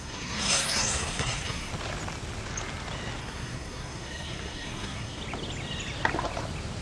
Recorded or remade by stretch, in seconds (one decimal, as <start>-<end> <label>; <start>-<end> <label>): 0.0-1.7 remade; 1.7-3.2 recorded; 3.2-5.2 remade; 5.2-6.8 recorded